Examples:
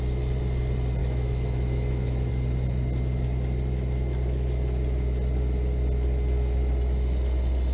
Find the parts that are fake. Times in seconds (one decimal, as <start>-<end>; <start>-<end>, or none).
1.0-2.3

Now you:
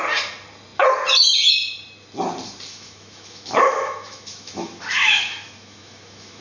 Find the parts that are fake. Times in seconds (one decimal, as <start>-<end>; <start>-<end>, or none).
2.7-6.4

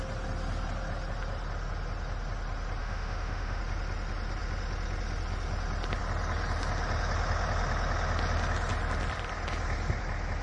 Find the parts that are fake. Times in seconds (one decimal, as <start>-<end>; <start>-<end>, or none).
2.8-3.6